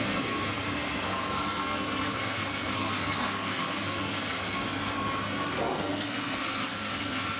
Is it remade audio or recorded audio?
remade